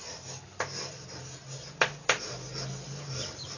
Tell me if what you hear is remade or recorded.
recorded